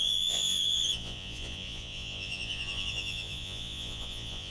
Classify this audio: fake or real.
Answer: fake